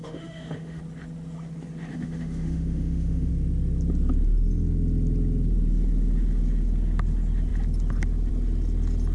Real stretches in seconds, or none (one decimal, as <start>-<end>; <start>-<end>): 0.8-1.9; 3.3-9.1